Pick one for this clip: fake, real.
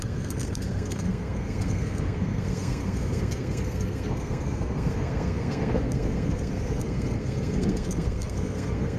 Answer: fake